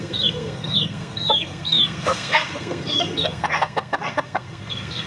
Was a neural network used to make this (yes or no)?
yes